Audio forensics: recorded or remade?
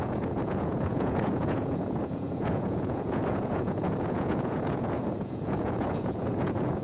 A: remade